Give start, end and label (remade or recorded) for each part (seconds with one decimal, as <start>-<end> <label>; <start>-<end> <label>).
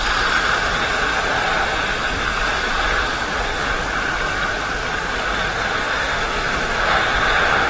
0.0-5.8 recorded; 5.8-7.0 remade; 7.0-7.7 recorded